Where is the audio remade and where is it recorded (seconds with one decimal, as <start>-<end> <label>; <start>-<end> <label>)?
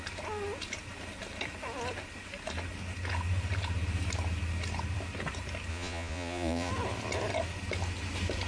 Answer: 0.0-5.7 recorded; 5.7-6.7 remade; 6.7-8.5 recorded